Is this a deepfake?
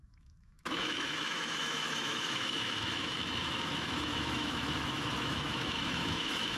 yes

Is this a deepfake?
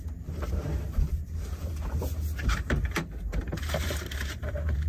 yes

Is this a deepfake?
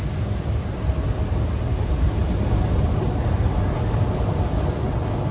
no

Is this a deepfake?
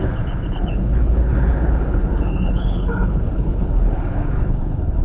yes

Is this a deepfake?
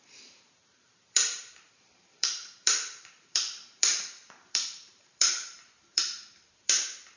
yes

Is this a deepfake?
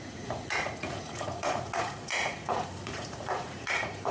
yes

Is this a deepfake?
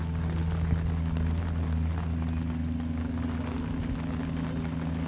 no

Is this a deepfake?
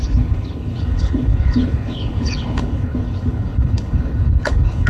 yes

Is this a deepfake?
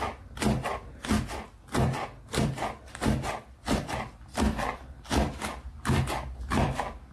no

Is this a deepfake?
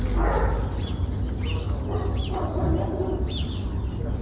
no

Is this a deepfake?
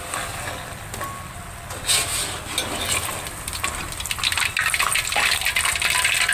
no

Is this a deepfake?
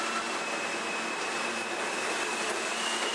no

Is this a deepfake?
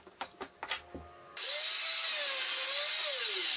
no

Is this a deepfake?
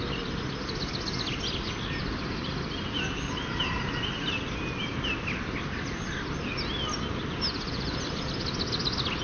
no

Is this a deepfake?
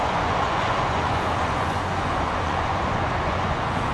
yes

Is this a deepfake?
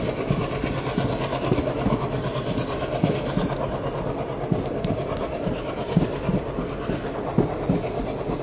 no